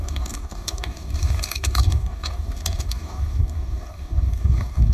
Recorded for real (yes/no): no